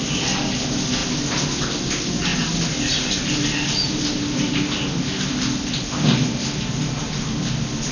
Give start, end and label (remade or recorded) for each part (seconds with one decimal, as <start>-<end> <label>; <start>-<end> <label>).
0.0-7.9 recorded